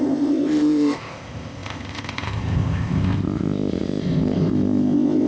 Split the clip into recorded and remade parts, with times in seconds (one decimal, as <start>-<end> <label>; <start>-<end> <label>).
0.0-5.3 remade